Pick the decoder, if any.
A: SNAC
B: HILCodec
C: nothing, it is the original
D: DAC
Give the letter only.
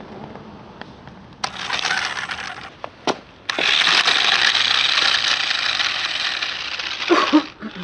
C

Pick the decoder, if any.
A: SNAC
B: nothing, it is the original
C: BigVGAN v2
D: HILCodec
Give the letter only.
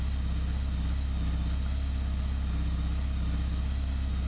B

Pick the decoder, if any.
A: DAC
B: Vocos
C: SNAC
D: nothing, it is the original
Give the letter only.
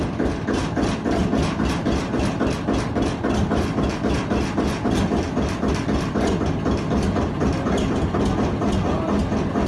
D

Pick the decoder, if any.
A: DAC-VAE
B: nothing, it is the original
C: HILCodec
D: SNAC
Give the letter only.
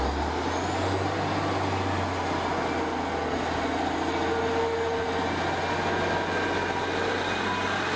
B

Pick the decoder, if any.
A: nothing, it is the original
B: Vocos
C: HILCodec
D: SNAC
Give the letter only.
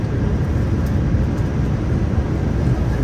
A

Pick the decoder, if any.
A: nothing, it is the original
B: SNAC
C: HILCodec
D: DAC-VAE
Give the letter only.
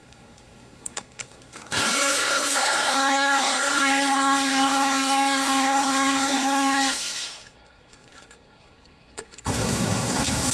B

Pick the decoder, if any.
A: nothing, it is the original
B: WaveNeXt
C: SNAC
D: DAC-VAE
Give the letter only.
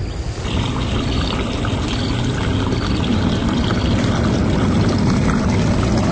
A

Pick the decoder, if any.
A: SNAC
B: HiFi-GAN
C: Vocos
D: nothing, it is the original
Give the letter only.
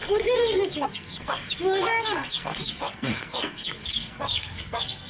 A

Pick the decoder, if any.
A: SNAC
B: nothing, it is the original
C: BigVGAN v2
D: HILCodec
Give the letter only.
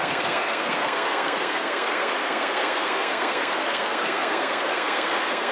A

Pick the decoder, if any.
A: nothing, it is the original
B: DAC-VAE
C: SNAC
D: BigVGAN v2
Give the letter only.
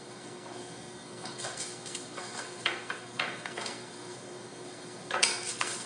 C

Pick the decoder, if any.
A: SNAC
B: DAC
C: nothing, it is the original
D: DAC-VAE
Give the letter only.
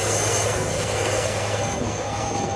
A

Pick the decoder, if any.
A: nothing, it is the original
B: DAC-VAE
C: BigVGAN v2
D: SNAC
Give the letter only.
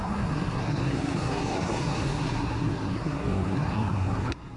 D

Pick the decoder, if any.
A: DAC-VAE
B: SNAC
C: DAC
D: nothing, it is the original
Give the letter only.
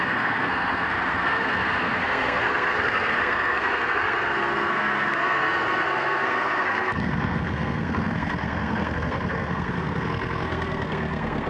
B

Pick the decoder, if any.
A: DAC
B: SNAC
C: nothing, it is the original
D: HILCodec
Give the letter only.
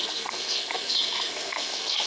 B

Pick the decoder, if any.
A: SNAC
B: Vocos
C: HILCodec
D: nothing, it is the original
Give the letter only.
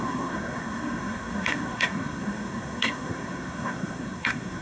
A